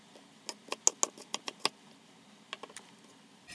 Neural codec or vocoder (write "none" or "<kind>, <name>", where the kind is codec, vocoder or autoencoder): none